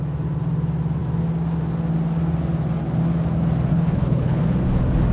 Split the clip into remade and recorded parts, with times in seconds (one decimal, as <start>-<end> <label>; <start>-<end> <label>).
0.0-3.7 recorded; 3.7-4.4 remade; 4.4-5.1 recorded